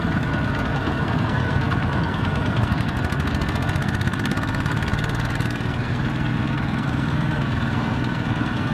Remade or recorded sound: remade